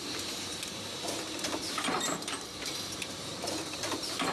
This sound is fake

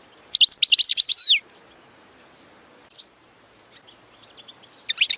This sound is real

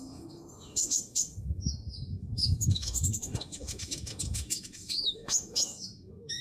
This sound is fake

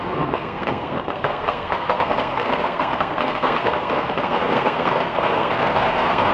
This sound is fake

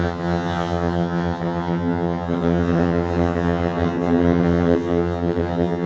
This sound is fake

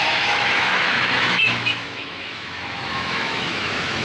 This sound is fake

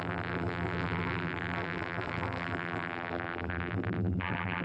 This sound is fake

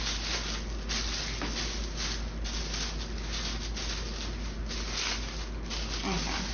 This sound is real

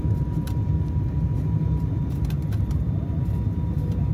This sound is fake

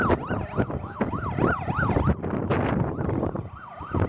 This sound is real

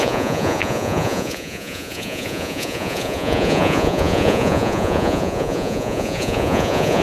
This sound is fake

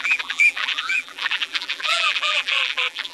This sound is fake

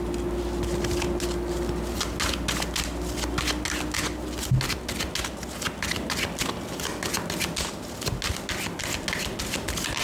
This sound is real